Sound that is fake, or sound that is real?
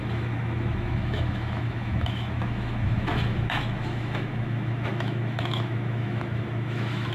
fake